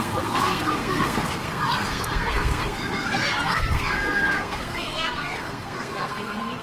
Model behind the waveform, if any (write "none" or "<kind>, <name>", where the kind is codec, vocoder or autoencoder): codec, SNAC